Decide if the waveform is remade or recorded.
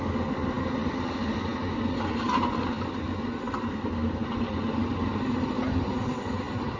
recorded